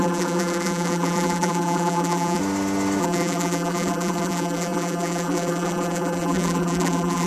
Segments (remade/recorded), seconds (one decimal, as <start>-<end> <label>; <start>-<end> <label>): 0.0-2.4 remade; 2.4-3.0 recorded; 3.0-7.3 remade